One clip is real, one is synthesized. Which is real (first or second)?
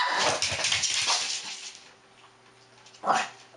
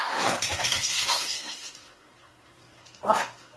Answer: first